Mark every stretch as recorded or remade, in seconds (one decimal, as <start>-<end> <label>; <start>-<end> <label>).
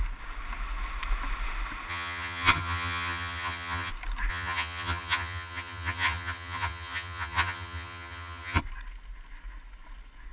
0.0-1.9 recorded; 1.9-3.9 remade; 3.9-4.3 recorded; 4.3-8.6 remade; 8.6-10.3 recorded